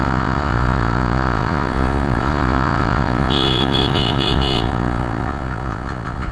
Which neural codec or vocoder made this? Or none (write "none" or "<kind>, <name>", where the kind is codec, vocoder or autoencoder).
vocoder, Vocos